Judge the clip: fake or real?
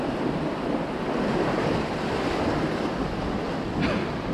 real